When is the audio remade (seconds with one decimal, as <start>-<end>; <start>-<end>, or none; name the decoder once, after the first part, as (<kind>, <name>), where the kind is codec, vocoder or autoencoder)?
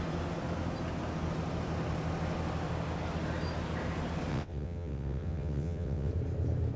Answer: 4.3-6.1 (vocoder, WaveNeXt)